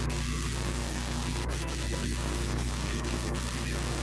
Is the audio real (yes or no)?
no